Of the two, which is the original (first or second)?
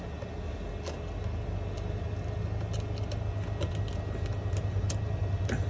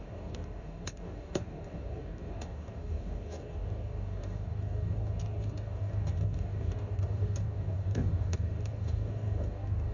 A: first